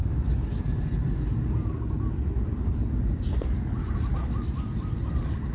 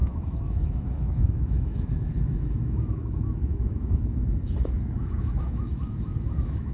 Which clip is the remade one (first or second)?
second